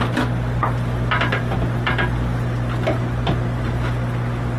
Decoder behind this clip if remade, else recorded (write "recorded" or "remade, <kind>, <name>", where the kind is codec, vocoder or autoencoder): recorded